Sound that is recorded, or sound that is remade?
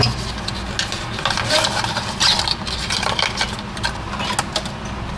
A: recorded